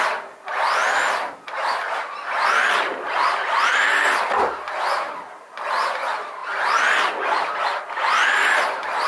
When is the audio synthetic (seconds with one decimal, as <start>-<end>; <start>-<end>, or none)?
none